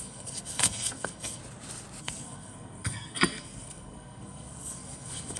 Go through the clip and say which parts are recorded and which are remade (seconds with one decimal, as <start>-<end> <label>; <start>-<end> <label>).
0.0-1.4 remade; 1.4-2.0 recorded; 2.0-5.4 remade